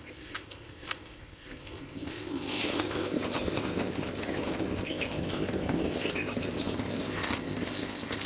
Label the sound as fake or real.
fake